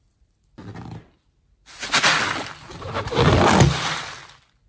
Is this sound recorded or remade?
recorded